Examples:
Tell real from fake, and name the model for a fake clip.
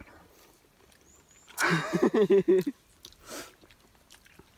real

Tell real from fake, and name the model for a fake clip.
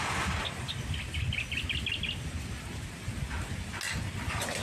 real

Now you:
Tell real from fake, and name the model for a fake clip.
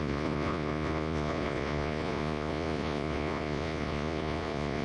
fake, vocoder, Vocos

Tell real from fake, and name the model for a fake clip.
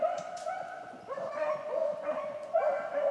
fake, vocoder, Vocos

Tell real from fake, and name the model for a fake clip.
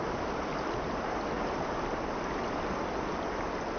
real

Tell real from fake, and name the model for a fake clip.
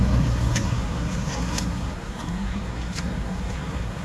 fake, codec, SNAC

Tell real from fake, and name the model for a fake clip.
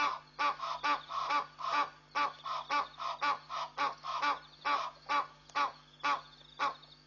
real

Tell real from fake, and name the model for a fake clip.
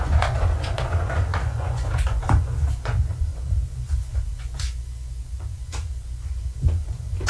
fake, vocoder, Vocos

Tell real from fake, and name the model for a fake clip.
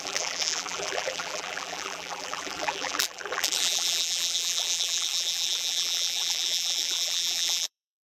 fake, vocoder, BigVGAN v2